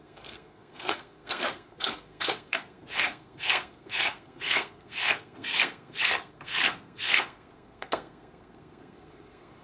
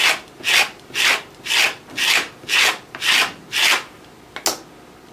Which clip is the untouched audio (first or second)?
second